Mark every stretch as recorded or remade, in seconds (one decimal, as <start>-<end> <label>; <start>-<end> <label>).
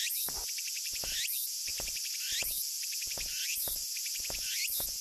0.0-5.0 recorded